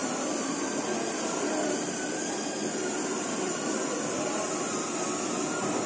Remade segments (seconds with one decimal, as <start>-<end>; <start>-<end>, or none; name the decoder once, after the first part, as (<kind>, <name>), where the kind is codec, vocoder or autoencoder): none